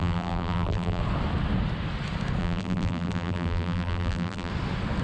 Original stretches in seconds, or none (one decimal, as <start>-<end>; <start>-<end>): 1.0-2.4; 4.5-5.0